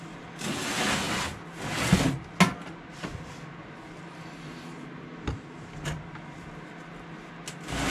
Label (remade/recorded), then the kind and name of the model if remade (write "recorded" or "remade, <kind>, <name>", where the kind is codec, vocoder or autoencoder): recorded